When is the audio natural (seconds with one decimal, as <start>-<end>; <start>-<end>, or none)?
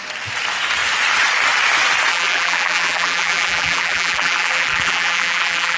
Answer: 0.0-2.1